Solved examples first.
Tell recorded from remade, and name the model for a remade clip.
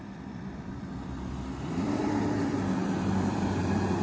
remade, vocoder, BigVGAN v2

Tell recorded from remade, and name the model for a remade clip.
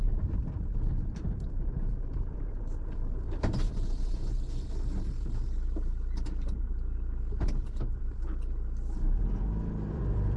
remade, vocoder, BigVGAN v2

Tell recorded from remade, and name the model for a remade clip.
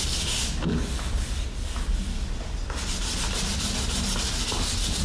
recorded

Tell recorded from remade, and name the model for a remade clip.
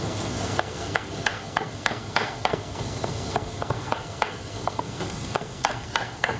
remade, codec, SNAC